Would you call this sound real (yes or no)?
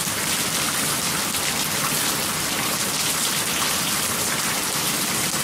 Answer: yes